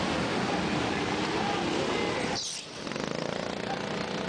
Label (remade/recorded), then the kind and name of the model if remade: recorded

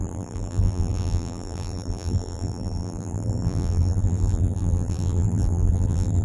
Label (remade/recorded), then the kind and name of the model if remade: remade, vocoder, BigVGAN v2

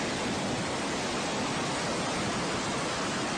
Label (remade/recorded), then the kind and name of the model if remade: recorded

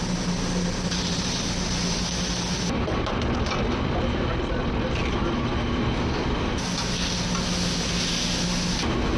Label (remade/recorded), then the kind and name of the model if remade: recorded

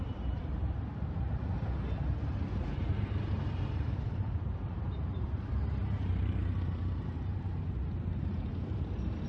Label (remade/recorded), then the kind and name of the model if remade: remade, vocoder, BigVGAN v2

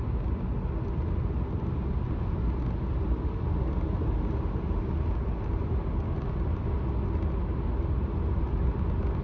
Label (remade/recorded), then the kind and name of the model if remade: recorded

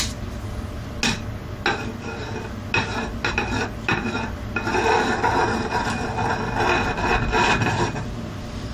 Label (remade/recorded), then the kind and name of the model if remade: recorded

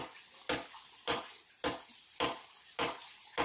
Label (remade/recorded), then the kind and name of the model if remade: recorded